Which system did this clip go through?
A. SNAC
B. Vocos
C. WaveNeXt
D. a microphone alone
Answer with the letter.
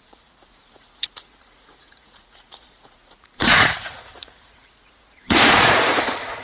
B